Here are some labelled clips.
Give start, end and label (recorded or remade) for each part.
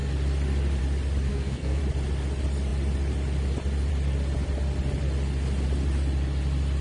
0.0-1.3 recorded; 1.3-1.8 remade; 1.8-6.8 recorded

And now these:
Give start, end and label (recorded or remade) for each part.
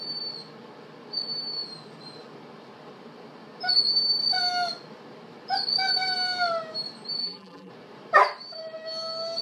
0.0-7.2 recorded; 7.2-7.7 remade; 7.7-9.4 recorded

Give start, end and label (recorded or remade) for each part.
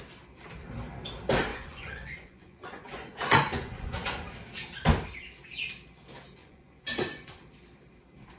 0.0-1.5 recorded; 1.5-4.3 remade; 4.3-6.4 recorded; 6.4-7.4 remade; 7.4-8.4 recorded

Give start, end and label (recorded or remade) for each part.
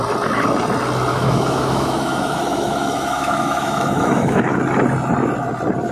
0.0-1.1 recorded; 1.1-4.6 remade; 4.6-5.9 recorded